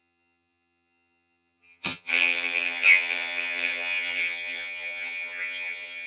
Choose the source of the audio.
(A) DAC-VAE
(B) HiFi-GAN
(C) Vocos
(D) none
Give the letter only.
B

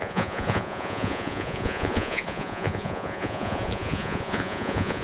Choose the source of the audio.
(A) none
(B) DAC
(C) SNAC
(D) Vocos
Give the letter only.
D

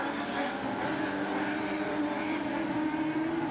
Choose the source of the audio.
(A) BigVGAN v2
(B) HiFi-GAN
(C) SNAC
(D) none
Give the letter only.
D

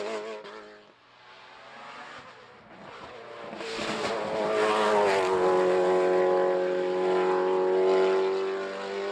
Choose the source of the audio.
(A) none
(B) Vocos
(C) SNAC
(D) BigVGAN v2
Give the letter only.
A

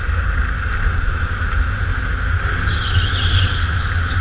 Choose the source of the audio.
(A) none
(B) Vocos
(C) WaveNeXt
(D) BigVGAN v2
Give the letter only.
A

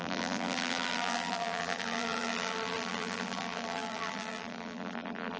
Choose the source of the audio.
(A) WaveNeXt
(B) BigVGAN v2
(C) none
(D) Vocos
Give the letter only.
B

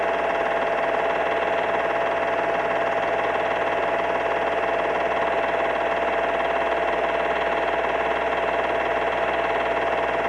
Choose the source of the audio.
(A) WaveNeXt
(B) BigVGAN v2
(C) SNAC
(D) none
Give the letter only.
D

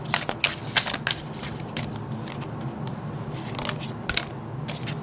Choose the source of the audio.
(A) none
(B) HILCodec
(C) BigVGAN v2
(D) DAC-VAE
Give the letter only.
A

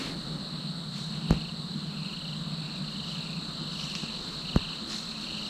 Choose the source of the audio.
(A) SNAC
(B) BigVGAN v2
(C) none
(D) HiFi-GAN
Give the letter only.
C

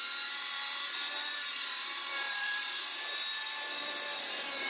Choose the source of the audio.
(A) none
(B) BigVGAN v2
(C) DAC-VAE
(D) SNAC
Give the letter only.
B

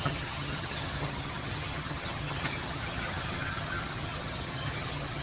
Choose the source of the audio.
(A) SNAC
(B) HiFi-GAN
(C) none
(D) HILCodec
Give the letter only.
B